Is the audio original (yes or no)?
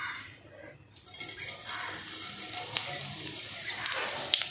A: yes